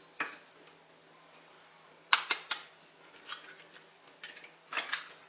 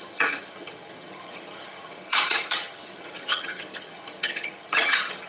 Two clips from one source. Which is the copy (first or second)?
second